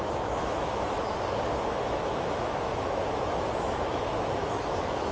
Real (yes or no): no